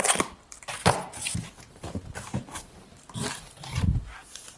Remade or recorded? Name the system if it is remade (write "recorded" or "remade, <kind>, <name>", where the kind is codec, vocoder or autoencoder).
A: remade, vocoder, BigVGAN v2